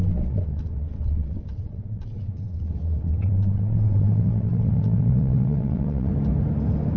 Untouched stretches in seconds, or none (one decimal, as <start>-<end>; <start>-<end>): 6.1-7.0